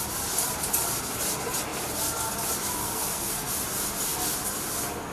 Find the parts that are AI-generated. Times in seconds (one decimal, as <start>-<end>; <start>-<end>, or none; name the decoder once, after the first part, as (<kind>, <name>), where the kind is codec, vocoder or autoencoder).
2.8-3.5 (codec, SNAC)

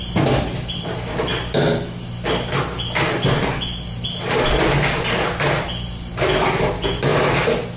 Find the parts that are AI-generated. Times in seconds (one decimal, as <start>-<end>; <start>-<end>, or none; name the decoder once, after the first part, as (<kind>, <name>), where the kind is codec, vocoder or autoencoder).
none

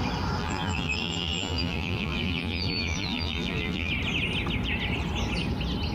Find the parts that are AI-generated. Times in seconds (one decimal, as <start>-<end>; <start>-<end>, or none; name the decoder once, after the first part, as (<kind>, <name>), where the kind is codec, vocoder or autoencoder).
0.4-3.9 (vocoder, BigVGAN v2)

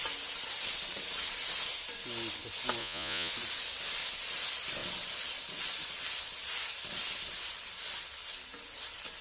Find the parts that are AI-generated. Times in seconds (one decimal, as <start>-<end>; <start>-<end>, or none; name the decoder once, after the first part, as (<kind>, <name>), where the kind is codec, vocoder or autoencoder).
2.8-3.3 (vocoder, Vocos)

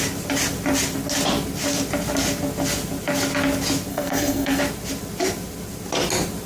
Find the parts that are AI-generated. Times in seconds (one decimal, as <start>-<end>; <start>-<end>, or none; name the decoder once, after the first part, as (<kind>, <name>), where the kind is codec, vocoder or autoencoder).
3.9-4.6 (codec, SNAC)

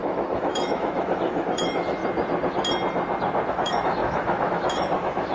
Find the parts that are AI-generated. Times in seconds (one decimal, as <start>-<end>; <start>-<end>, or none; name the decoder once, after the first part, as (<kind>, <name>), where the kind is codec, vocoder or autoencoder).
0.0-2.0 (autoencoder, DAC-VAE); 3.5-5.3